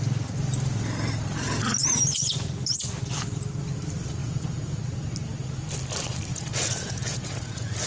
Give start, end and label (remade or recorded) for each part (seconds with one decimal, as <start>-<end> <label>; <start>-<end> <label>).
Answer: 0.0-4.2 recorded; 4.2-4.8 remade; 4.8-6.3 recorded; 6.3-7.9 remade